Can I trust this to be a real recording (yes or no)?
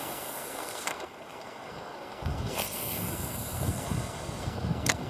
no